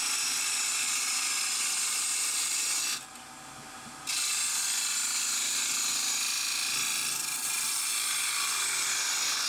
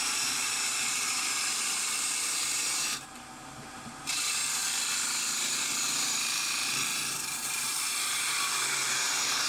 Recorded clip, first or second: first